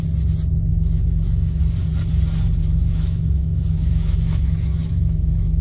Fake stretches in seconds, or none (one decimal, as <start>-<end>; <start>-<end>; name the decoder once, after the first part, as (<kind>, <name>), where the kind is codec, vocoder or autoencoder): 0.7-1.6 (autoencoder, DAC-VAE); 2.6-5.6